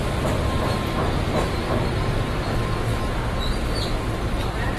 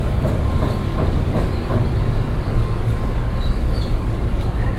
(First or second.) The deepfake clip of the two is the second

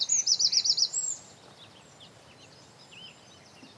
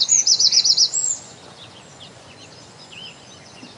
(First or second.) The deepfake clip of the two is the second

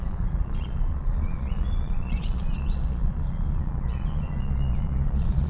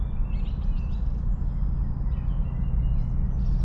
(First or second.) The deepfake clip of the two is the first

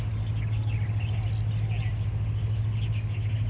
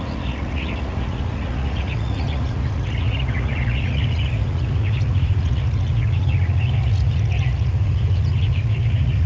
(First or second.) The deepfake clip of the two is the second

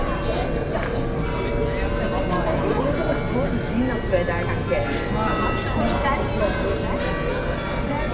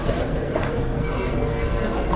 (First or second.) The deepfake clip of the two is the second